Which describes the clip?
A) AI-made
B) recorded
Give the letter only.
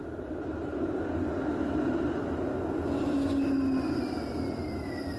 B